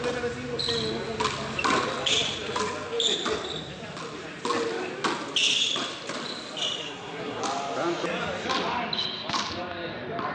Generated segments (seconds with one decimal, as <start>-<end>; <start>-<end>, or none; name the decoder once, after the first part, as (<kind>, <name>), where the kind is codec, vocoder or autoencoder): 6.8-7.4 (codec, SNAC)